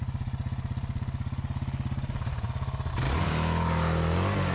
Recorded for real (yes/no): yes